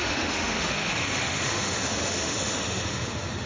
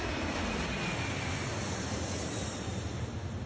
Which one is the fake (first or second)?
first